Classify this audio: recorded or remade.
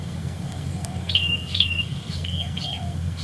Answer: remade